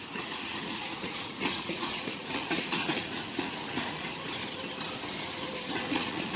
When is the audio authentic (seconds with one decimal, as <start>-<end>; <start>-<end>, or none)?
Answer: 4.1-5.9